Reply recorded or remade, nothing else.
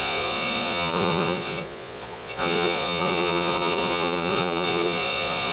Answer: remade